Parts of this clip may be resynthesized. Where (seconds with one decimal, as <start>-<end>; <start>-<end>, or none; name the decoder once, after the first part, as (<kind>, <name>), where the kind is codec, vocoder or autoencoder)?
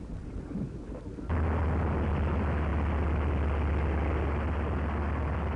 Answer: none